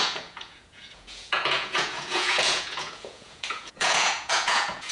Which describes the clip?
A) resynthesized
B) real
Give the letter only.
A